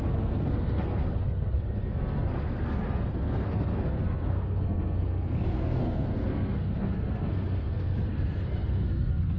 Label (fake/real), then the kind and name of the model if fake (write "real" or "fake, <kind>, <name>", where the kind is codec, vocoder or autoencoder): fake, codec, SNAC